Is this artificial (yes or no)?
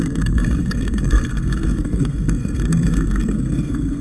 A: yes